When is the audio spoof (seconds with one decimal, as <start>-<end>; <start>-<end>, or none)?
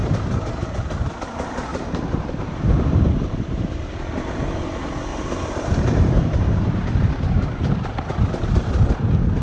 0.0-0.8; 1.7-3.7; 5.1-7.7